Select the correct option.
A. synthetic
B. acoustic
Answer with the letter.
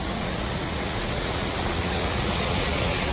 A